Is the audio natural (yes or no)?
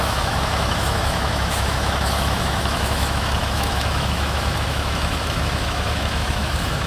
no